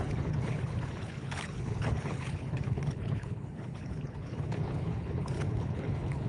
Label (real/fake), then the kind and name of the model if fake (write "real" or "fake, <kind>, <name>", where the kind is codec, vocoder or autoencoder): fake, codec, HILCodec